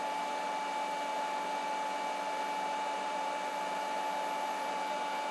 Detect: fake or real real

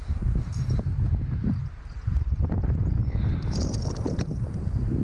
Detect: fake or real real